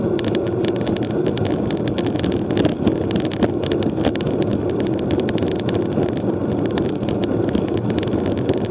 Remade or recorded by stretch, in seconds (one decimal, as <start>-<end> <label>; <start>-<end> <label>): 0.0-8.7 recorded